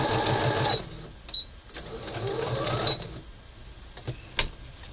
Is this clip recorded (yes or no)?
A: yes